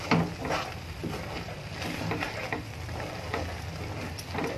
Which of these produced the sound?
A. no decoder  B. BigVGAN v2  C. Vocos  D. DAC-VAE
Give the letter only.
A